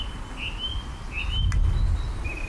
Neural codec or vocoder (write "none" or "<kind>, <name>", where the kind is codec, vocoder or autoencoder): none